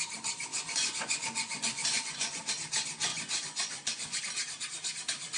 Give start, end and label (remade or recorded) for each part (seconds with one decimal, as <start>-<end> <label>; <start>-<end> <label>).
0.0-0.5 recorded; 0.5-2.5 remade; 2.5-3.1 recorded; 3.1-4.2 remade; 4.2-5.4 recorded